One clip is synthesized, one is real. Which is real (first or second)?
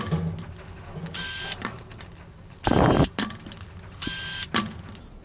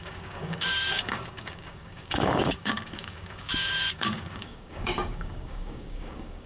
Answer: first